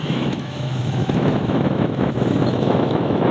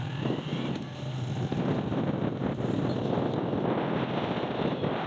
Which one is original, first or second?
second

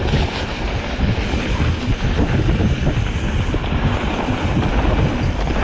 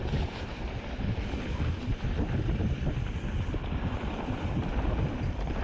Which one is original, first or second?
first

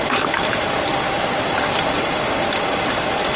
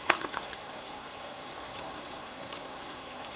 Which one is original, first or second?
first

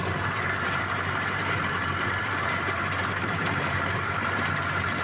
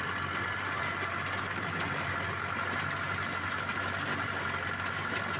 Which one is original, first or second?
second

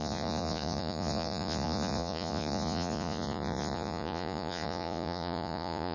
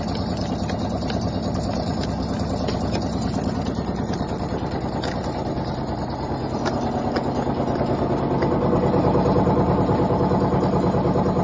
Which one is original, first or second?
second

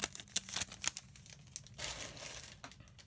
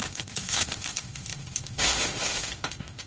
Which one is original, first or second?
first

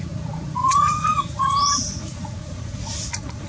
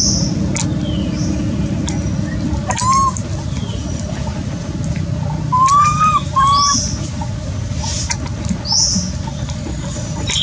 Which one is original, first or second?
second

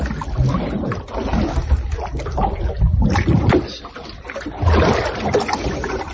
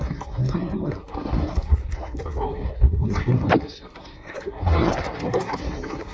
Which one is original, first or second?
first